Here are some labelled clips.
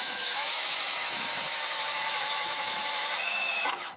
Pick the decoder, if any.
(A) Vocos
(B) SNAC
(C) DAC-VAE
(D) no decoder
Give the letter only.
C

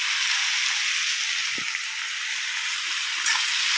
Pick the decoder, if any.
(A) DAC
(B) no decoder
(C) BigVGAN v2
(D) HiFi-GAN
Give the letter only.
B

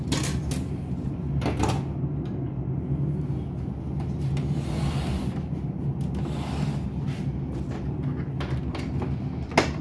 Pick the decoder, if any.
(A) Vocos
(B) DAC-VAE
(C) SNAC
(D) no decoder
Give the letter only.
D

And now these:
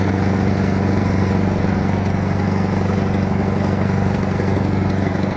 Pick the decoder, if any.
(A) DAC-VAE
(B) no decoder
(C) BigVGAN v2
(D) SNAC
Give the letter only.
D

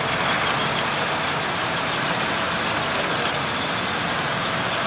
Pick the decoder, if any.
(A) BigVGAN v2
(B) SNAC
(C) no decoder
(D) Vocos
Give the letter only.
C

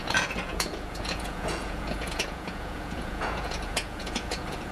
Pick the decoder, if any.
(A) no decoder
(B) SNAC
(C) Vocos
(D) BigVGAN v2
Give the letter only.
C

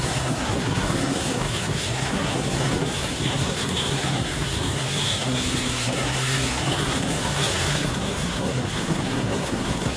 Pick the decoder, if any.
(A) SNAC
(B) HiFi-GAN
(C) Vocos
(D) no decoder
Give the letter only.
A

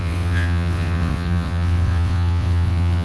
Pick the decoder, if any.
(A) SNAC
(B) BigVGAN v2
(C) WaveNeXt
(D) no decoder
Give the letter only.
C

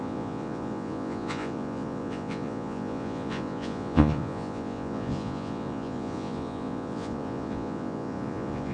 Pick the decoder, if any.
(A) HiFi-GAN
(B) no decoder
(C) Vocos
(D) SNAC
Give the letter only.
C